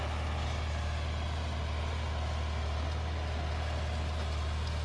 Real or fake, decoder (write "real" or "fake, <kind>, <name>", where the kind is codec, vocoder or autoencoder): real